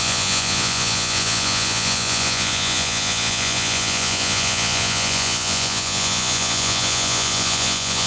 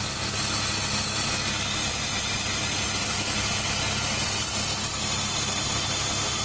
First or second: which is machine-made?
first